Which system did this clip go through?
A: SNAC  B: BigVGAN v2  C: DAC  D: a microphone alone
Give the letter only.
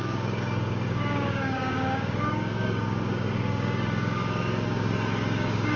C